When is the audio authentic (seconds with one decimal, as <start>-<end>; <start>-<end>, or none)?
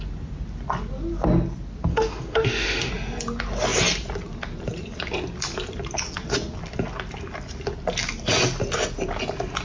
0.0-1.9; 2.9-9.6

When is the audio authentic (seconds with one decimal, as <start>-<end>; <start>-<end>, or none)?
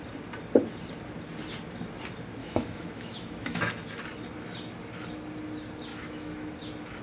0.0-2.4; 3.6-5.9; 6.5-7.0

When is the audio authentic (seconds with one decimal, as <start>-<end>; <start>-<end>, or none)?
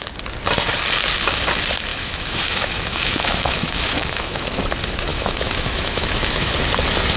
0.0-1.9; 4.6-5.1; 6.5-7.2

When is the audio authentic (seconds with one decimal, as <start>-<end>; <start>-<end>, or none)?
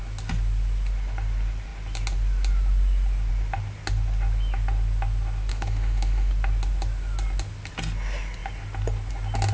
0.0-5.5; 6.3-9.5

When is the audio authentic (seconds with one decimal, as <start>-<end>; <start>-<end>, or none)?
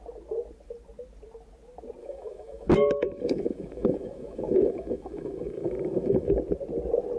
0.0-2.0; 6.3-7.2